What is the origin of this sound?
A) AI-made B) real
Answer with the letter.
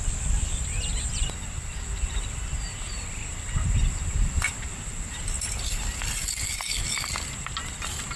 B